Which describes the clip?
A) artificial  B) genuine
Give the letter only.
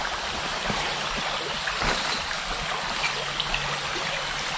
B